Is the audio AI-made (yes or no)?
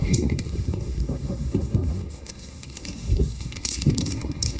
yes